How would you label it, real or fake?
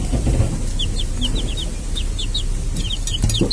real